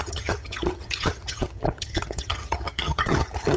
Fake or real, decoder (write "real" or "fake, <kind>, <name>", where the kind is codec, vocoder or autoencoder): fake, vocoder, HiFi-GAN